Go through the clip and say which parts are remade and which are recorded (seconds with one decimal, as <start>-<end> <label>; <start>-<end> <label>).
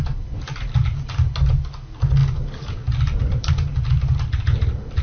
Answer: 0.0-5.0 recorded